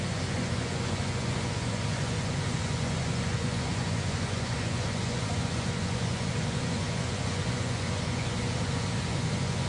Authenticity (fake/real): fake